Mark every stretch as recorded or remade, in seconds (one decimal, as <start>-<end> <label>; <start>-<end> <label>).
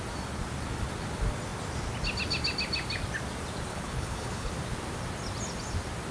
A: 0.0-3.7 recorded; 3.7-4.5 remade; 4.5-6.1 recorded